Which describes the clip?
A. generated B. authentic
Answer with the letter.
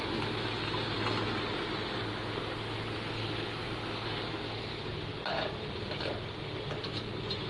B